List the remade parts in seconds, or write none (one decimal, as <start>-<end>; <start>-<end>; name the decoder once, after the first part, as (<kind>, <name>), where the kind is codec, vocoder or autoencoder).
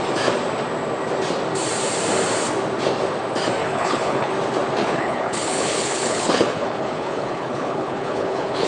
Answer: 3.6-4.3 (codec, HILCodec); 4.8-8.7